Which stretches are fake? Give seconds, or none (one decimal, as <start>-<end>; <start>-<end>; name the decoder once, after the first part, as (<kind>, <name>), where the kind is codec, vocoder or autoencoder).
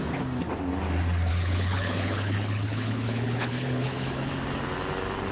1.3-4.3 (codec, HILCodec)